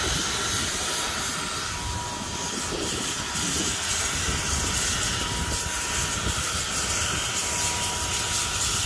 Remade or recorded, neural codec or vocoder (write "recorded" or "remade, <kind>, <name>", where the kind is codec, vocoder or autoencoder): recorded